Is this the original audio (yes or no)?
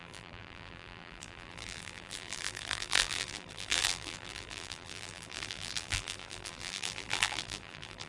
no